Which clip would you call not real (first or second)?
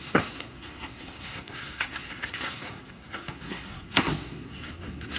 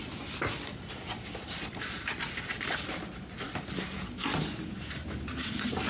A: first